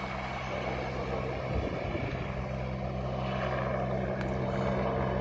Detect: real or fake real